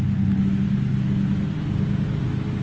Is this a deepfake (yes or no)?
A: no